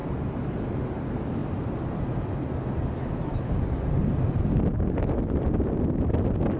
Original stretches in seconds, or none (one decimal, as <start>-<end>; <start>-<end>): 0.9-6.6